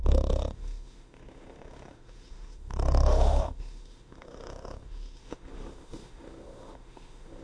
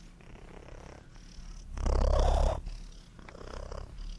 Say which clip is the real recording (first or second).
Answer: second